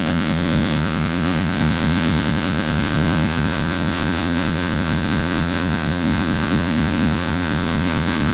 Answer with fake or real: fake